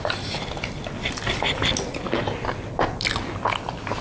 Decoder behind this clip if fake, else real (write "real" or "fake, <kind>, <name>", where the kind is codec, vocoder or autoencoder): real